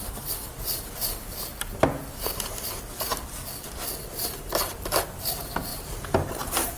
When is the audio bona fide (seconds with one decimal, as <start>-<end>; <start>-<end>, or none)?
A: 0.0-6.8